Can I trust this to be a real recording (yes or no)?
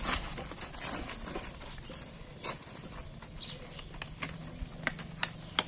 yes